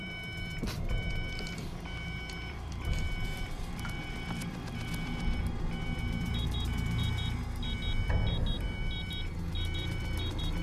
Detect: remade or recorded remade